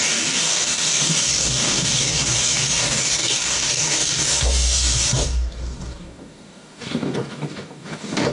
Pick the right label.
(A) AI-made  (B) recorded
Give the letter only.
A